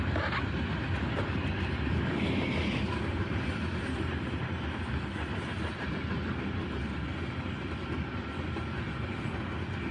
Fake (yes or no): no